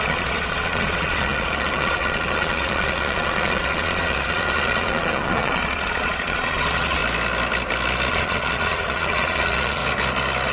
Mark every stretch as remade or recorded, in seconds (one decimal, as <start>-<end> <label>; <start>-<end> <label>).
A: 0.0-7.0 remade; 7.0-8.1 recorded; 8.1-9.8 remade; 9.8-10.5 recorded